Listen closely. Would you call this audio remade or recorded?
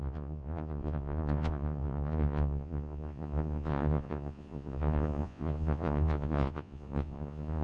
remade